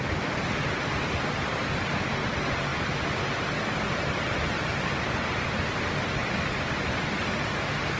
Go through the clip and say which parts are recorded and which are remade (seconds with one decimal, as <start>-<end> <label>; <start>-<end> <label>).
0.0-8.0 recorded